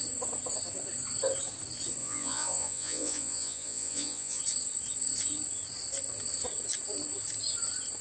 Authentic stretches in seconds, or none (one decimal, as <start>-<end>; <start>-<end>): 0.0-2.0; 4.4-8.0